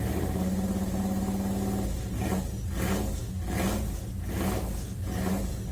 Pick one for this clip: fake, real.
real